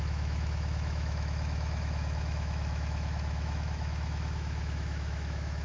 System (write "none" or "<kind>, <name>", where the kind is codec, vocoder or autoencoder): autoencoder, DAC-VAE